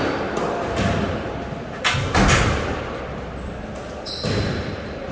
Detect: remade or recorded recorded